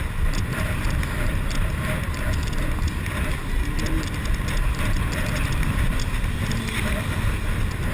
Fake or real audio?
real